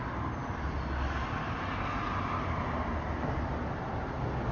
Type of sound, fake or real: real